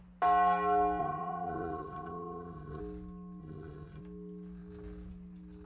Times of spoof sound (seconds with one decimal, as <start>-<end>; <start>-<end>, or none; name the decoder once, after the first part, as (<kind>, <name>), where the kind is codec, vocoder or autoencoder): 1.0-2.8 (vocoder, HiFi-GAN); 3.4-4.0